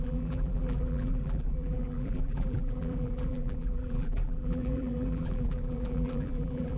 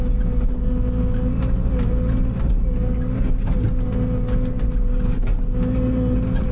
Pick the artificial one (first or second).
first